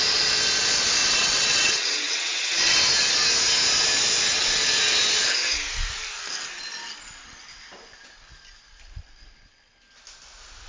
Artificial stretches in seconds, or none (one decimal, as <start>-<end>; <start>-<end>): 1.0-2.8